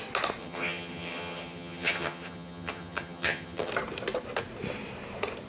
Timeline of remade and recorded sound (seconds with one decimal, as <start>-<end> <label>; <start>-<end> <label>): 0.0-0.4 recorded; 0.4-3.7 remade; 3.7-5.5 recorded

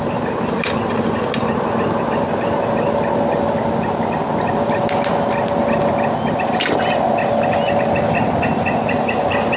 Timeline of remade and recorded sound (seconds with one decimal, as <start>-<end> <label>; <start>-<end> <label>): 0.0-9.6 recorded